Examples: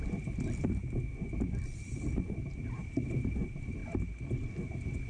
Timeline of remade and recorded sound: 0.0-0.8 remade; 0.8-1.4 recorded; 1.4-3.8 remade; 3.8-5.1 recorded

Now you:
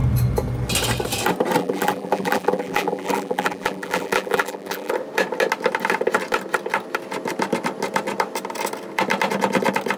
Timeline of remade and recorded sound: 0.0-1.6 recorded; 1.6-4.9 remade; 4.9-10.0 recorded

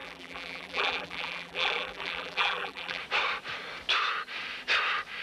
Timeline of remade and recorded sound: 0.0-3.0 remade; 3.0-5.2 recorded